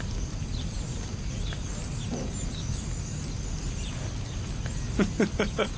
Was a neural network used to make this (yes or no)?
no